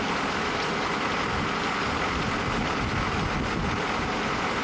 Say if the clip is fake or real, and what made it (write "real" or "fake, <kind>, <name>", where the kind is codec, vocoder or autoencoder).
real